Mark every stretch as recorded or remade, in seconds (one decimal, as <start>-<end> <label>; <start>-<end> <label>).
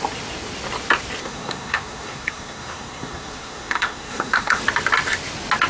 0.0-1.2 recorded; 1.2-4.6 remade; 4.6-5.7 recorded